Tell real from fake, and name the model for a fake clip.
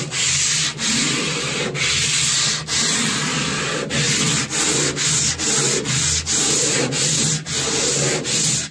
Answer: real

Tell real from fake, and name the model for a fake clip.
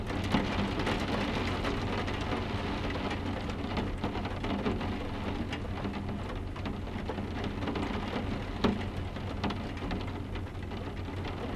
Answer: real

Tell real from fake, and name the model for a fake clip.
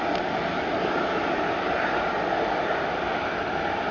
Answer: real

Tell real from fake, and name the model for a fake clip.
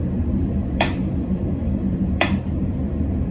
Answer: fake, vocoder, BigVGAN v2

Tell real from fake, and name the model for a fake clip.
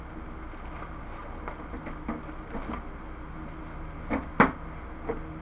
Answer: real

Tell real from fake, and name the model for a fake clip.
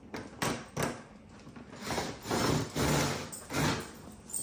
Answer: real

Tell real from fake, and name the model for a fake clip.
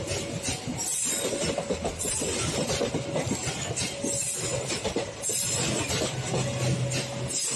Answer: real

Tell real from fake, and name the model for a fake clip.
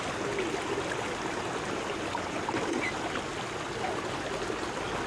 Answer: real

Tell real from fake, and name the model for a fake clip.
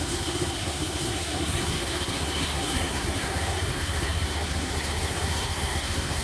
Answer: fake, codec, SNAC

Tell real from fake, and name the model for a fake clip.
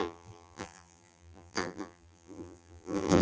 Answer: fake, vocoder, BigVGAN v2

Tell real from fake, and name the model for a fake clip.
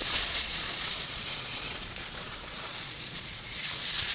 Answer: fake, vocoder, Vocos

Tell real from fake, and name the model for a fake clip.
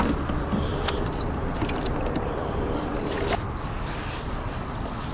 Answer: fake, vocoder, BigVGAN v2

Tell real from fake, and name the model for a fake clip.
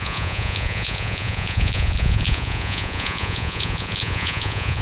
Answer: fake, vocoder, Vocos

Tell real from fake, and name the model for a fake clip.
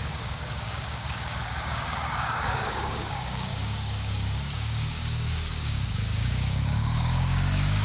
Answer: fake, codec, DAC